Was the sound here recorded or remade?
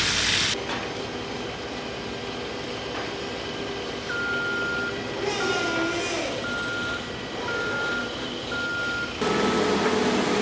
recorded